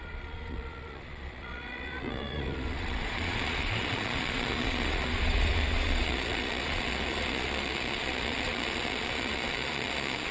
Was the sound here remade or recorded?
remade